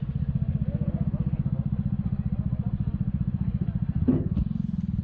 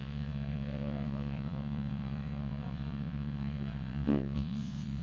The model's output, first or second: second